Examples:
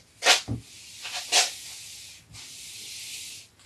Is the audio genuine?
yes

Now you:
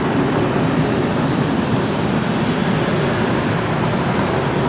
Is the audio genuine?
yes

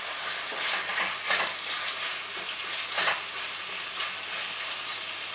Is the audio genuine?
yes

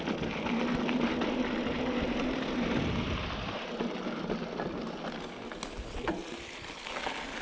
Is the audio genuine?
yes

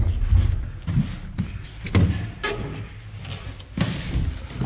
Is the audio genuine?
yes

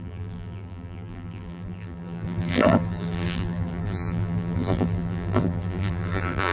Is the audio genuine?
no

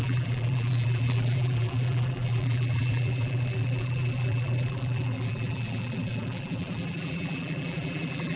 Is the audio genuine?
no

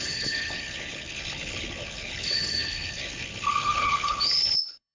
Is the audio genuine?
no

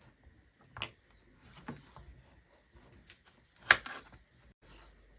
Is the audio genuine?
yes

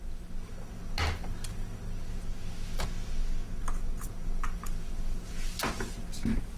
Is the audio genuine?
yes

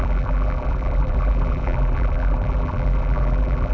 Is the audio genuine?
no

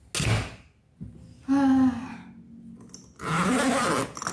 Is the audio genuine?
yes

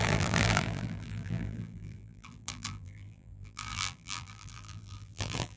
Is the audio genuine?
no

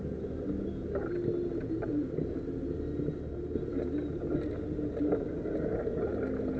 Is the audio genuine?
yes